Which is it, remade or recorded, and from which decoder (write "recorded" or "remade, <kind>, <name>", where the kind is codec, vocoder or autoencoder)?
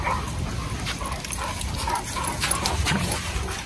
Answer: recorded